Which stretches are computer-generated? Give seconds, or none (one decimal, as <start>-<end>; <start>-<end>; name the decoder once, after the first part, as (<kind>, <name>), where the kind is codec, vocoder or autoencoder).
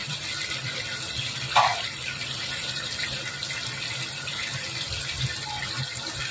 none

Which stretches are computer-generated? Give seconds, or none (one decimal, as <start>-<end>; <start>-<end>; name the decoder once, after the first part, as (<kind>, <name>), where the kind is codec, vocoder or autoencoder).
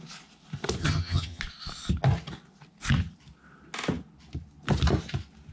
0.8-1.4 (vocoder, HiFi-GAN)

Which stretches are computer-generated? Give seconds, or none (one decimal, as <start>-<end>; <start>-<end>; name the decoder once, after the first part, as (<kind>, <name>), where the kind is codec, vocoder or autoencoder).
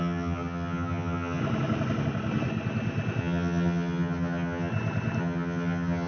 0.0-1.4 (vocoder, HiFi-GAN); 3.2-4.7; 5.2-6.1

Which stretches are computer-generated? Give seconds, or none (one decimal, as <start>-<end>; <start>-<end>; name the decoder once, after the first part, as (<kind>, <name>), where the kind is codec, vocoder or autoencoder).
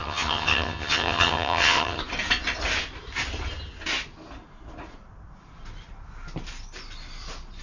0.0-2.0 (vocoder, HiFi-GAN)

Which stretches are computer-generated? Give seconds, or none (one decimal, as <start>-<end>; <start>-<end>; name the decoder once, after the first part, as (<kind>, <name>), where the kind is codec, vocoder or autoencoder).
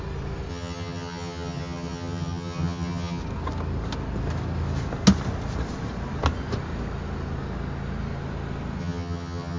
0.5-3.2 (vocoder, HiFi-GAN); 8.8-9.6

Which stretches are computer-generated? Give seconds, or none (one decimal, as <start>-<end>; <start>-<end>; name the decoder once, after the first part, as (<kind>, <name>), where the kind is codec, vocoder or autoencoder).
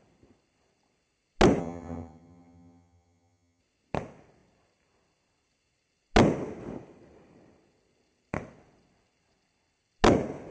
1.6-3.6 (vocoder, HiFi-GAN)